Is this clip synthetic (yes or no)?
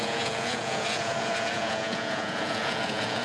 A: yes